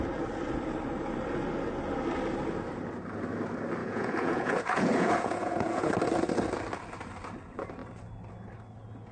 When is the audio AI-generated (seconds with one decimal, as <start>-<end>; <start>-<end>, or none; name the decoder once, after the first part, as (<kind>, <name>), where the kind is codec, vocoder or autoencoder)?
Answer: 3.8-5.9 (vocoder, Vocos)